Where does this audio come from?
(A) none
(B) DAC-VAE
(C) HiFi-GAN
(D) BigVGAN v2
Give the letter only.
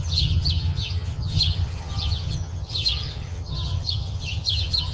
C